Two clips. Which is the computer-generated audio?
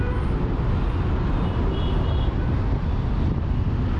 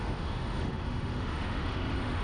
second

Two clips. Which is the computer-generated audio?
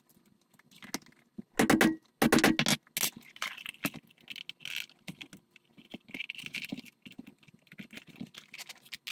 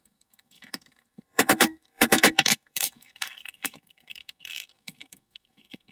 second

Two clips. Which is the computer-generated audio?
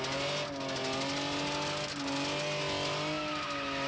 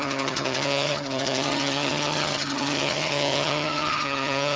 second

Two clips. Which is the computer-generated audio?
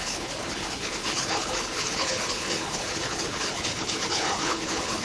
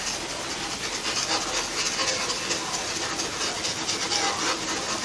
first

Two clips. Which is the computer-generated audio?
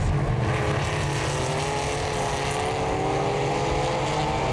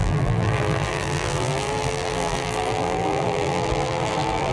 second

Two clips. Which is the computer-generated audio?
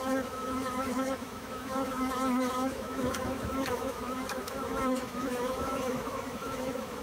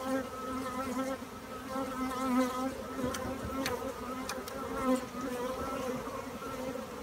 first